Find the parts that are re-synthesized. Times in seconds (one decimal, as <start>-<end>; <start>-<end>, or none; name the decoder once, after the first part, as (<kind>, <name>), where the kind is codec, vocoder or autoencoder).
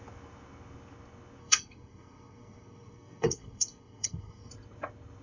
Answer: 1.4-4.5 (codec, SNAC)